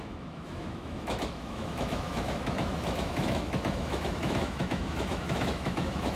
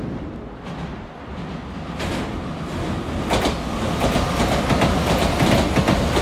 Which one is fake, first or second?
first